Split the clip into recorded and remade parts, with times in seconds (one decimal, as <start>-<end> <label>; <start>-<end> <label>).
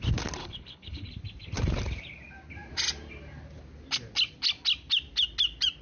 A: 0.0-0.4 recorded; 0.4-1.1 remade; 1.1-5.8 recorded